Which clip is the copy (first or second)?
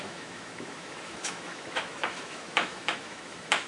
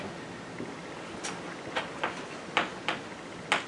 first